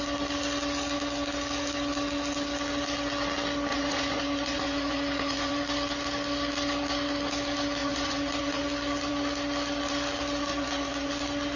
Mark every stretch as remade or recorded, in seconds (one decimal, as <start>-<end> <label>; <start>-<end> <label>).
0.0-3.7 recorded; 3.7-5.5 remade; 5.5-7.8 recorded; 7.8-8.6 remade; 8.6-10.5 recorded; 10.5-11.1 remade; 11.1-11.6 recorded